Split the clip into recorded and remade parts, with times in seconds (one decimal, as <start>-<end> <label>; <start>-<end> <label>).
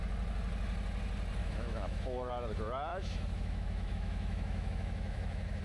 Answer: 0.0-1.4 recorded; 1.4-2.3 remade; 2.3-2.9 recorded; 2.9-5.6 remade